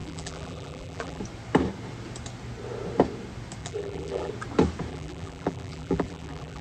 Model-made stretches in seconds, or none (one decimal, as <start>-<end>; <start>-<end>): 0.0-1.2; 3.6-4.3; 4.9-6.6